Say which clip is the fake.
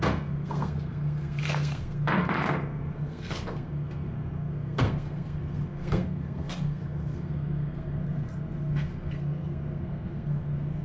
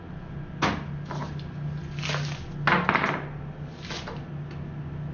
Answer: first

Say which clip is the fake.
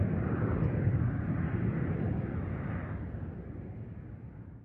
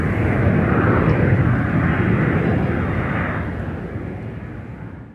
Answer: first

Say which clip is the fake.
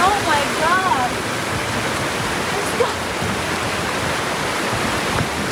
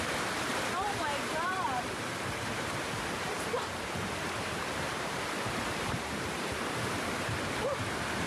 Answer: second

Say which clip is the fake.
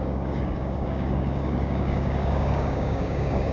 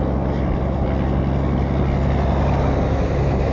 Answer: first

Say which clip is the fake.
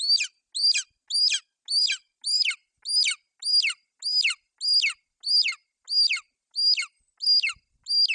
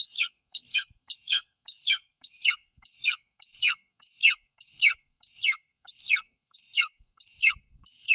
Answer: second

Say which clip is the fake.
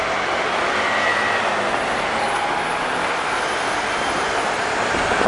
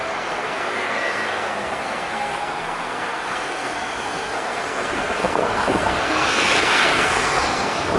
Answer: second